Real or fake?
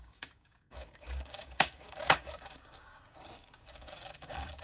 fake